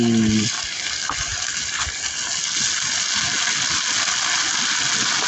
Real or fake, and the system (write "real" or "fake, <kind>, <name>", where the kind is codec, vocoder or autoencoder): real